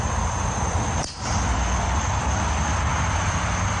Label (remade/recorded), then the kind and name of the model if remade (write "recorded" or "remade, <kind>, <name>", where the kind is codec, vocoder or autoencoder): recorded